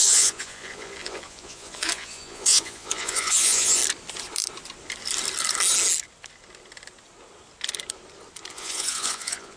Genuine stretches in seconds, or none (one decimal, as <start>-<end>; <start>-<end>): 3.8-8.5